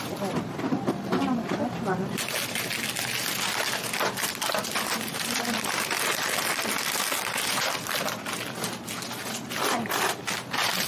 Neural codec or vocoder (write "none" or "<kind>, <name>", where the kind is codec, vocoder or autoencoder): none